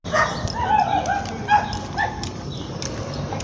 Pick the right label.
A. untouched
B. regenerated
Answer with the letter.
A